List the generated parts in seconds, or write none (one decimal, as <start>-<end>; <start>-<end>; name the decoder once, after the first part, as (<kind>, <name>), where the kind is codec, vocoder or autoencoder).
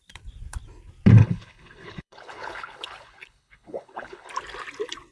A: 1.2-4.3 (codec, HILCodec)